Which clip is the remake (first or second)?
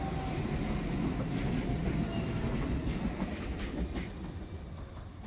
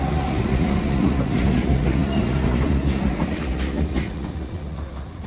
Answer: second